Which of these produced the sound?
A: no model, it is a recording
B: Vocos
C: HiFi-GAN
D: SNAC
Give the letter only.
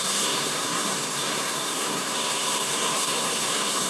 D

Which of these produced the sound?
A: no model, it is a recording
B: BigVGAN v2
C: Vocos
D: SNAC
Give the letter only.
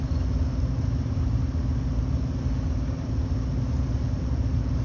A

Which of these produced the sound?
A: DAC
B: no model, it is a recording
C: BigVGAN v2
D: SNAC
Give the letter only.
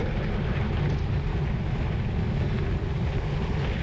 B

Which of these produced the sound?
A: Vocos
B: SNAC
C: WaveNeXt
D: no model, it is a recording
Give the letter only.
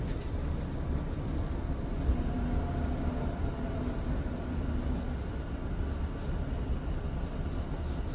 D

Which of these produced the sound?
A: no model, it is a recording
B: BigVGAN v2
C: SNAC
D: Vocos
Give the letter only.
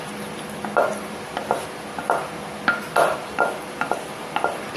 A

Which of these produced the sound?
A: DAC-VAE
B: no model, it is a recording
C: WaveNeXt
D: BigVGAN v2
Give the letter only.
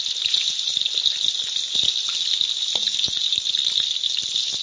B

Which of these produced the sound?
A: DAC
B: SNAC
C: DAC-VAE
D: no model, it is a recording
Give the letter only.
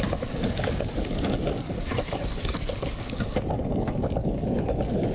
A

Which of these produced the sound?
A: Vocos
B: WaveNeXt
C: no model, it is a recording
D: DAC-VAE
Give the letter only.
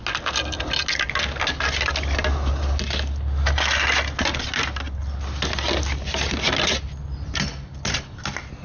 C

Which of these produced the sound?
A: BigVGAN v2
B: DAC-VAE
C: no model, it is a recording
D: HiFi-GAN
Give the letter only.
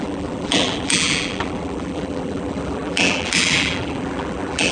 A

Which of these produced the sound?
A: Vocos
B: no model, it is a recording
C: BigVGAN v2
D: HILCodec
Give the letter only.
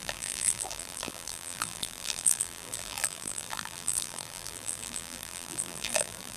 C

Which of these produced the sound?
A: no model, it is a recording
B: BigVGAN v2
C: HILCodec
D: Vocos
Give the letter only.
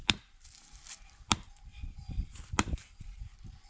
B